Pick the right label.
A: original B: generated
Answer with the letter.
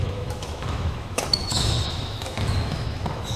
B